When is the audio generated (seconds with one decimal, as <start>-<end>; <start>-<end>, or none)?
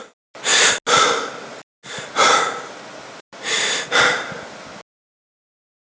none